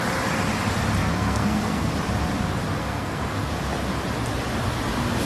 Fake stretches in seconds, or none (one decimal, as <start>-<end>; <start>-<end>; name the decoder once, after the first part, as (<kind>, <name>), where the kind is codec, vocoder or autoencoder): 1.0-1.9 (codec, SNAC); 2.8-3.5